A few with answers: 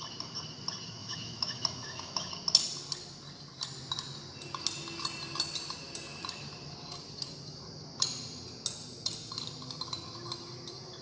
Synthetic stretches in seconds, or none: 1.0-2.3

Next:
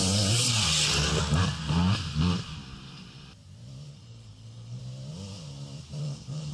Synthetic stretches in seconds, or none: 3.9-4.8; 6.0-6.5

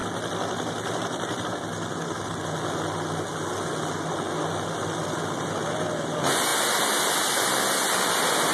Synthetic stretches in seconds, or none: none